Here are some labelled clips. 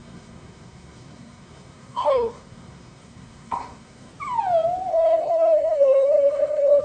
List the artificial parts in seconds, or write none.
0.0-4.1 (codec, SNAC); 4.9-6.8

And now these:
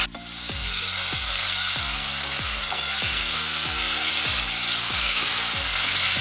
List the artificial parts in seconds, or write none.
0.4-4.1 (codec, SNAC); 4.7-6.2